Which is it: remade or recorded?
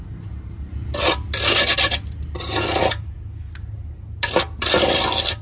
recorded